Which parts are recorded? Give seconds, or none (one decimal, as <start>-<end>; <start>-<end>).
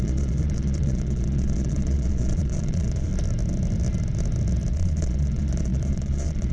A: 3.1-4.7